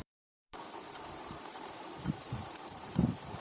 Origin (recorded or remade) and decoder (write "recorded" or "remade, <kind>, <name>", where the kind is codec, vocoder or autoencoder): remade, vocoder, BigVGAN v2